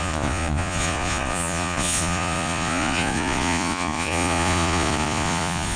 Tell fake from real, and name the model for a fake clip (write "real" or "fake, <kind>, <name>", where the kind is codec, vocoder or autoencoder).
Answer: fake, vocoder, Vocos